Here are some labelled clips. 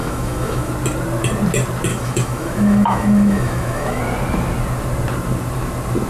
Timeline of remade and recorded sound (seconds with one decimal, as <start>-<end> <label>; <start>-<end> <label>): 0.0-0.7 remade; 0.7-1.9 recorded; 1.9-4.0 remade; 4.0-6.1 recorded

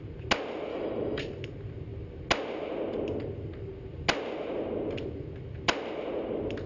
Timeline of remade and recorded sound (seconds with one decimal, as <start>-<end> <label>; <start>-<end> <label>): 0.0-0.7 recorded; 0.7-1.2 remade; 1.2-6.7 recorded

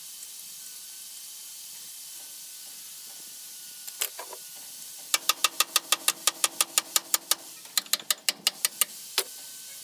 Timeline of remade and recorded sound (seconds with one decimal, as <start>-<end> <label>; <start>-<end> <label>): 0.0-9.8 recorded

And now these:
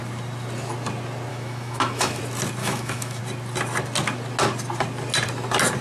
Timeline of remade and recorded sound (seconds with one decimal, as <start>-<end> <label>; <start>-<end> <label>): 0.0-1.3 recorded; 1.3-2.2 remade; 2.2-2.6 recorded; 2.6-3.2 remade; 3.2-5.8 recorded